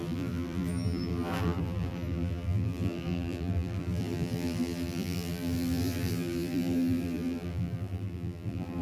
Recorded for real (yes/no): no